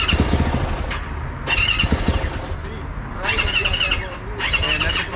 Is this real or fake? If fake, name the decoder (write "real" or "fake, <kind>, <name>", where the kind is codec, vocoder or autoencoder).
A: real